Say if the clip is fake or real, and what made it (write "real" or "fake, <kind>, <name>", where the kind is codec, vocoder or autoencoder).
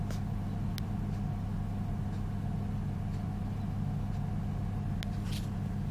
real